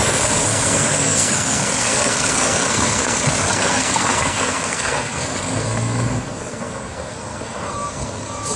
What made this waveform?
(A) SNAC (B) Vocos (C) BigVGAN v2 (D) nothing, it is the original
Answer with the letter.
A